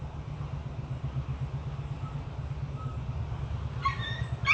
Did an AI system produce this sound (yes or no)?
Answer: no